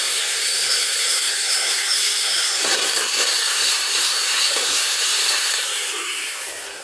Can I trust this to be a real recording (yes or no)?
no